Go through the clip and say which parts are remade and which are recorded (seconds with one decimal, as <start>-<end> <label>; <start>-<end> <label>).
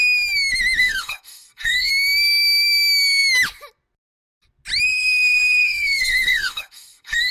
0.0-0.8 recorded; 0.8-1.9 remade; 1.9-4.9 recorded; 4.9-7.3 remade